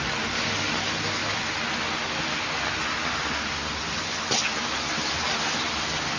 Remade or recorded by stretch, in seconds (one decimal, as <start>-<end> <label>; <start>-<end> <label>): 0.0-6.2 recorded